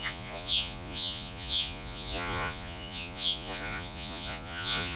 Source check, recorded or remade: remade